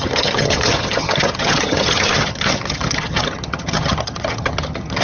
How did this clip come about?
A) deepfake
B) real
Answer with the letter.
A